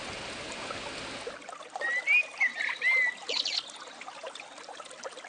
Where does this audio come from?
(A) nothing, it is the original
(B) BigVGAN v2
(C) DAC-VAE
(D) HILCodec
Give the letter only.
A